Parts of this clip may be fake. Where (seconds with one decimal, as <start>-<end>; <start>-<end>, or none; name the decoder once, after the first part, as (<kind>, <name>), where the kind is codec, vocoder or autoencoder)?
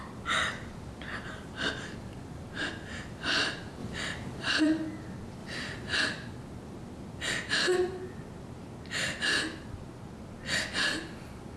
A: 5.4-6.0 (vocoder, BigVGAN v2)